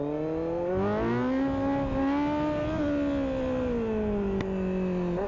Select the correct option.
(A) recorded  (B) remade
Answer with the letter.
A